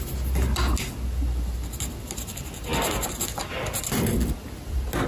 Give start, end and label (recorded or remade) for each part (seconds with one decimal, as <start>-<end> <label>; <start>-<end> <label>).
0.0-5.1 recorded